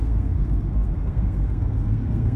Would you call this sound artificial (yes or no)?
yes